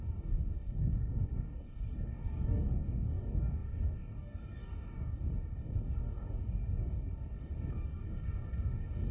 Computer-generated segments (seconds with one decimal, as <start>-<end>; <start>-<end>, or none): 0.0-9.1

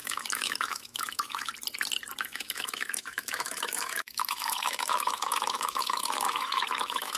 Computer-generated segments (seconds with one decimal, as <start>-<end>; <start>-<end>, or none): 0.0-1.5; 2.2-7.2

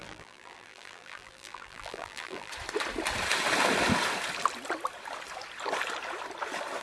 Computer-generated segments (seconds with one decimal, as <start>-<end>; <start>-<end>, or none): 0.0-2.5

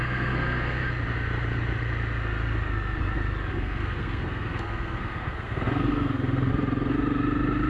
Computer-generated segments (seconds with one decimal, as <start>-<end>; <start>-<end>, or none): 0.0-0.8; 3.5-6.5

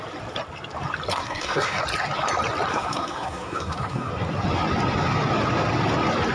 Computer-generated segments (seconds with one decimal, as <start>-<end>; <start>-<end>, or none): 1.1-1.8; 2.7-4.1